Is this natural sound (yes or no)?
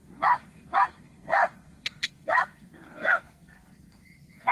no